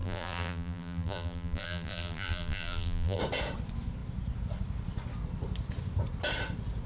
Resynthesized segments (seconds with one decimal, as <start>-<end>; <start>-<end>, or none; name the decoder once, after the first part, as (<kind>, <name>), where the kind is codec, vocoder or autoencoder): 0.0-3.2 (vocoder, BigVGAN v2)